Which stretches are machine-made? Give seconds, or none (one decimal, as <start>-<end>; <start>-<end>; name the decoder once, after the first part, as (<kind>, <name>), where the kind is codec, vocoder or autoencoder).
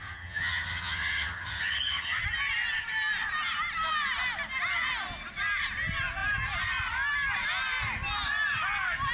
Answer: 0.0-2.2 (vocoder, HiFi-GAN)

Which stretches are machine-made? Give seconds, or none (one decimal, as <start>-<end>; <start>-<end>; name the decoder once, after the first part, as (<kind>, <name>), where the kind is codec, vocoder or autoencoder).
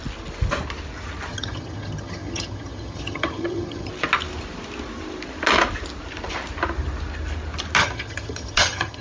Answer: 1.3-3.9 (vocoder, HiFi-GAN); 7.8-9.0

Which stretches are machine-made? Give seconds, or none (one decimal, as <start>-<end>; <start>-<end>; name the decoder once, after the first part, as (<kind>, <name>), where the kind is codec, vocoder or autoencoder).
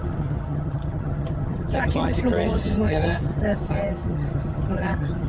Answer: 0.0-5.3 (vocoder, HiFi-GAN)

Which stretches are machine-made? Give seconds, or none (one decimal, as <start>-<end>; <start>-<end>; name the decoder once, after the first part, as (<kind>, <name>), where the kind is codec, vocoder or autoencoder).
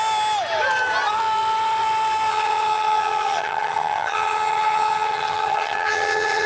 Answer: 2.3-6.5 (vocoder, HiFi-GAN)